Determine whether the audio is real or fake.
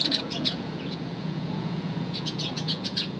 fake